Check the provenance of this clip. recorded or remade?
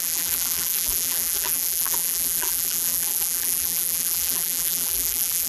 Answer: remade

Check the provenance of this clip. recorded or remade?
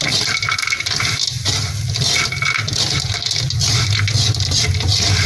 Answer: recorded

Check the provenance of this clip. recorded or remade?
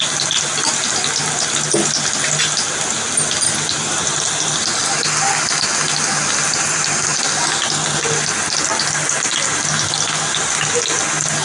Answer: recorded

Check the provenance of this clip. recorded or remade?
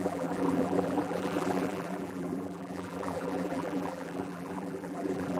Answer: remade